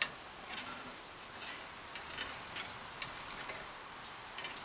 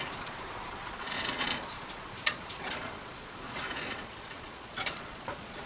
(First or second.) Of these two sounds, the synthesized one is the second